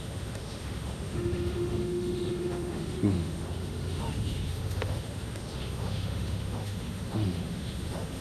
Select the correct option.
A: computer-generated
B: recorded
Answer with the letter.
A